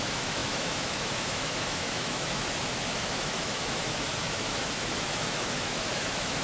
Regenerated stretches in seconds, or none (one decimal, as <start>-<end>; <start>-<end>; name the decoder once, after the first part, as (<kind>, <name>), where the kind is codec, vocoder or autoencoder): 0.0-6.4 (autoencoder, DAC-VAE)